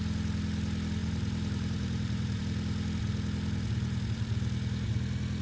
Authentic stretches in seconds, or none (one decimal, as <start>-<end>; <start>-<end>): 0.0-1.0; 2.4-5.4